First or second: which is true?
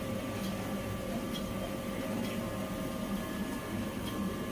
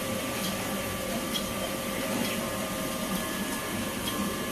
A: first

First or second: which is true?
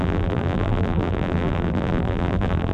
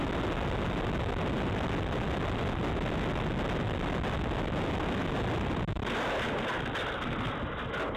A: second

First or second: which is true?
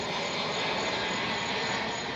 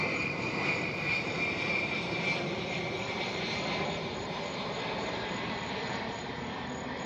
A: first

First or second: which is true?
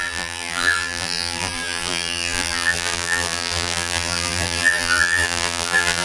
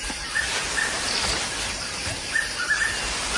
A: second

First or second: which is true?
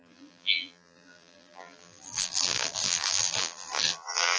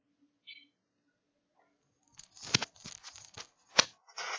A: second